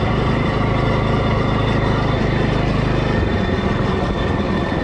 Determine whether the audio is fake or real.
fake